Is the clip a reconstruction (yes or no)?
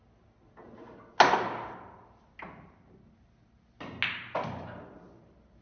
no